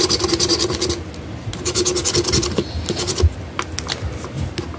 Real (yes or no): yes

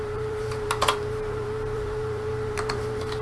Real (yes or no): no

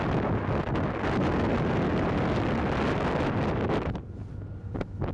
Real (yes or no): yes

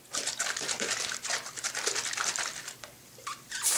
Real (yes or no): no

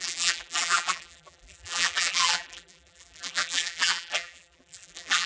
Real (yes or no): no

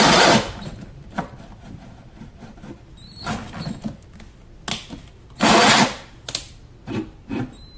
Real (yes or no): yes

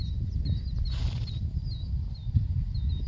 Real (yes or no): yes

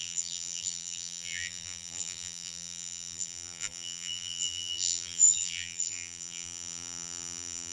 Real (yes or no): no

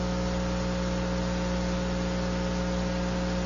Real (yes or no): yes